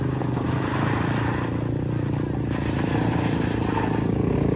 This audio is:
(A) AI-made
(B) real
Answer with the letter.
B